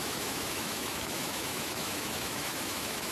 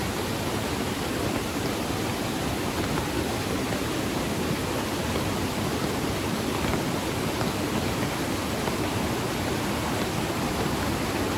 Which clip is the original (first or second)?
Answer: second